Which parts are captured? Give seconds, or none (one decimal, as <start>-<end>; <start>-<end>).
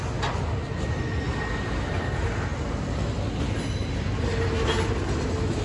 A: 0.0-5.6